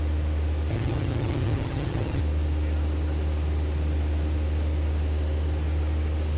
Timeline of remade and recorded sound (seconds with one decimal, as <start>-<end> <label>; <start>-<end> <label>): 0.0-0.7 recorded; 0.7-2.2 remade; 2.2-6.4 recorded